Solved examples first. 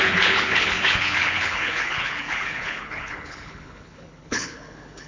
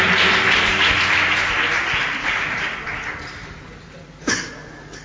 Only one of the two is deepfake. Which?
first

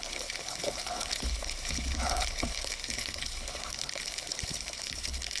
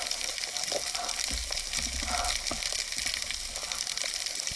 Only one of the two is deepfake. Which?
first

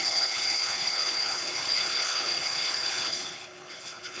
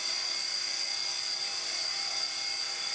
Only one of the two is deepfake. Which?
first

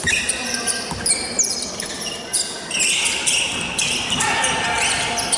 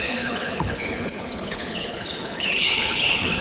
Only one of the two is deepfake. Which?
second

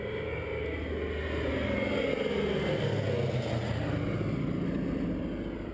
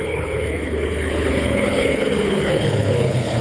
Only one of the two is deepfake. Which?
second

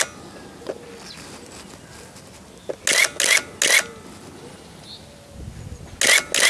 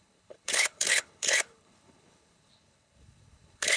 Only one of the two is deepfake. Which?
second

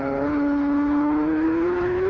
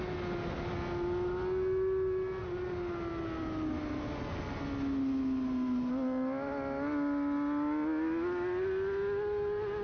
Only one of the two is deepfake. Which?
first